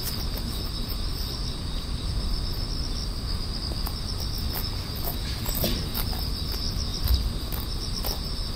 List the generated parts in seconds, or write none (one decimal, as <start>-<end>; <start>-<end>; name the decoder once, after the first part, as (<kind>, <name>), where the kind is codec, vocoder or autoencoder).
none